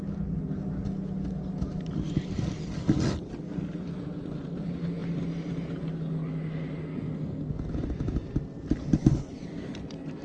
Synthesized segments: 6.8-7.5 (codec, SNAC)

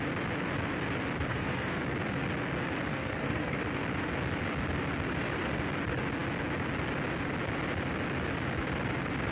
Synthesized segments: 1.3-1.8 (codec, SNAC); 2.9-3.6

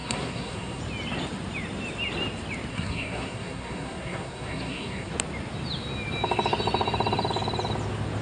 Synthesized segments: 0.0-0.8 (codec, SNAC); 2.7-5.1